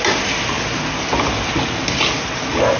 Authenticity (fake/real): real